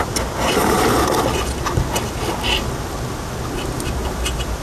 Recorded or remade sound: recorded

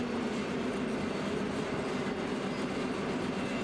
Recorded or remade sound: recorded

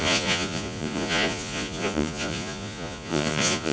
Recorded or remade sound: remade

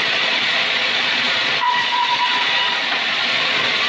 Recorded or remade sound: remade